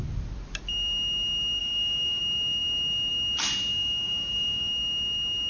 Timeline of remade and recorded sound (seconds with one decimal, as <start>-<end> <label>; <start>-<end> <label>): 0.0-1.6 recorded; 1.6-2.2 remade; 2.2-3.7 recorded; 3.7-4.7 remade; 4.7-5.5 recorded